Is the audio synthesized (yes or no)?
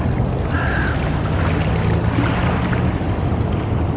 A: no